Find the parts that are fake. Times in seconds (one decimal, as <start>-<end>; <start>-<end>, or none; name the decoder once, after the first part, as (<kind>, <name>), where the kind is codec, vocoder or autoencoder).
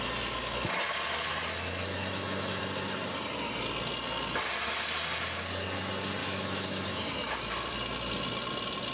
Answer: 1.3-2.6 (autoencoder, DAC-VAE); 6.2-7.0